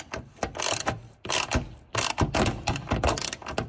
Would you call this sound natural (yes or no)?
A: yes